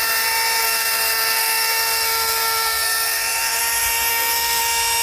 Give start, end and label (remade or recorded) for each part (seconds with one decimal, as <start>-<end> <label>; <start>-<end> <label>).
0.0-0.6 recorded; 0.6-3.6 remade; 3.6-4.1 recorded; 4.1-4.6 remade; 4.6-5.0 recorded